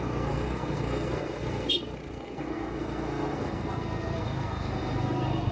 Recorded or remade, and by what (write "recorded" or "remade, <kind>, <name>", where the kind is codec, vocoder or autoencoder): remade, codec, SNAC